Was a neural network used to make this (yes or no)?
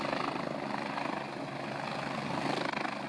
no